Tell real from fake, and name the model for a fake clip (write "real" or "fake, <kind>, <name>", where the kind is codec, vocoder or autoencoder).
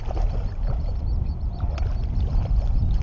real